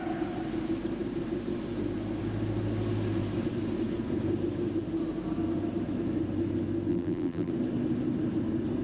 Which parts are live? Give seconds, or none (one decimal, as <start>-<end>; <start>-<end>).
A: 0.0-6.9; 7.5-8.8

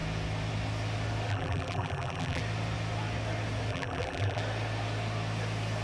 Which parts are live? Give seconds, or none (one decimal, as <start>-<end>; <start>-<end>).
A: 0.0-1.3; 2.4-3.7; 4.4-5.8

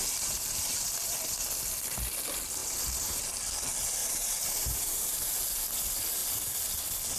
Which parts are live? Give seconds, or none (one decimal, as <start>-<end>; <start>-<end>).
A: 1.2-2.6; 3.2-4.0; 5.4-7.2

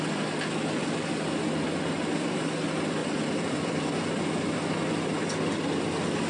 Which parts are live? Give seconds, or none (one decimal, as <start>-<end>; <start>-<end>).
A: 0.0-3.0; 4.2-6.3